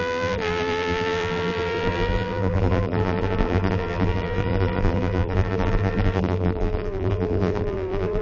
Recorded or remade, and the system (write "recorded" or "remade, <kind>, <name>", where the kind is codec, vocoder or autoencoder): remade, vocoder, BigVGAN v2